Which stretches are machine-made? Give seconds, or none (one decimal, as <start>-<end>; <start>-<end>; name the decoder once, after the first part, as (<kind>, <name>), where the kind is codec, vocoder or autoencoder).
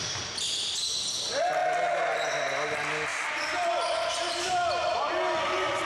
none